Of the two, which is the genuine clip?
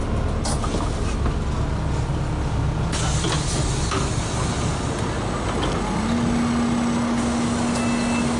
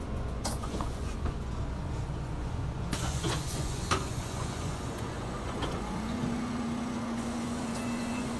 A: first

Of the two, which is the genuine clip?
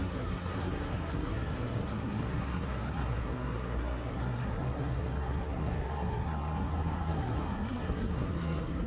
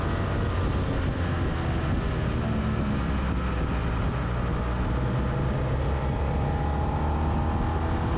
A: second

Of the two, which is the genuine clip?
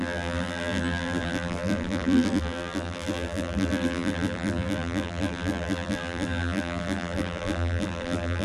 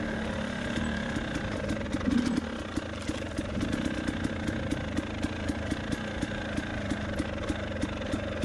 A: second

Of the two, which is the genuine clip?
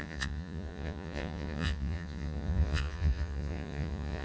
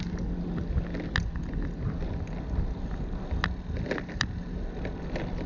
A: second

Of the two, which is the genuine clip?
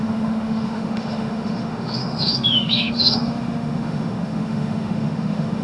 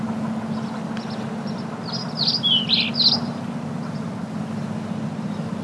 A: second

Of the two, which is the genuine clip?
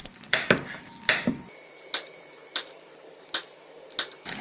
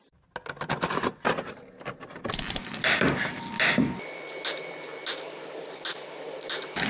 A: second